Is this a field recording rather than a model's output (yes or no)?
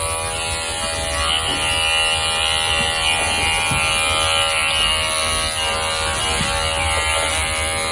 yes